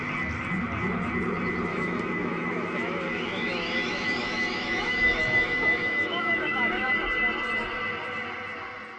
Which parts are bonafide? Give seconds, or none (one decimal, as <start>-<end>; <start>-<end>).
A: 0.0-1.7; 6.9-9.0